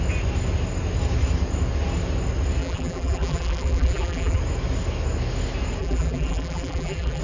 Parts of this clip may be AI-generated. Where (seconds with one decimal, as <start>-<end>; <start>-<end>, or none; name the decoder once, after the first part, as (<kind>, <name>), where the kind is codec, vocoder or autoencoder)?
2.6-4.4 (vocoder, BigVGAN v2); 5.8-7.2